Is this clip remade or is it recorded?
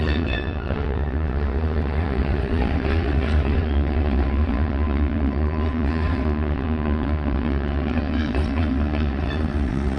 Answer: remade